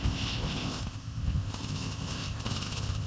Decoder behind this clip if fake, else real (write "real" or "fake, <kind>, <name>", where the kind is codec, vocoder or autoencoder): fake, codec, ZipCodec